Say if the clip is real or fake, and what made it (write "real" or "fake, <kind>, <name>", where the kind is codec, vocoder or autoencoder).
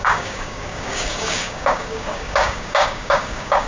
fake, codec, DAC